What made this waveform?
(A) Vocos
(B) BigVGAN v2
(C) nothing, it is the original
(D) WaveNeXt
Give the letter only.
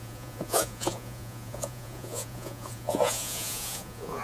A